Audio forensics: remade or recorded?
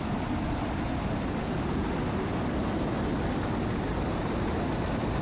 recorded